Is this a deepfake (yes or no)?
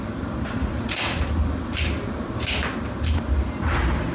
no